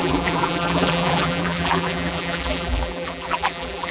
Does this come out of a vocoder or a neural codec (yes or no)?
yes